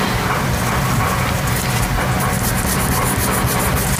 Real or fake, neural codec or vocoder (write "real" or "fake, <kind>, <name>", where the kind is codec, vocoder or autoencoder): real